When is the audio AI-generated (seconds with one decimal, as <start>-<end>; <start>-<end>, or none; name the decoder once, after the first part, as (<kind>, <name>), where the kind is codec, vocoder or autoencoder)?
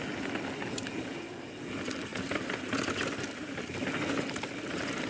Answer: none